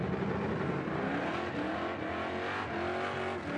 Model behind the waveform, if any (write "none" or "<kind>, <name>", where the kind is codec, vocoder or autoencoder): none